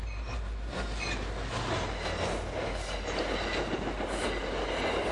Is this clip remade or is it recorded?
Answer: recorded